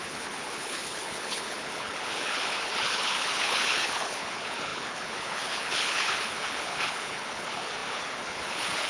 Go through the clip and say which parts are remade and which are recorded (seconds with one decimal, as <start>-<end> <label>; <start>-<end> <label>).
0.0-8.9 remade